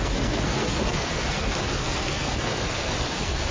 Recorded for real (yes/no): no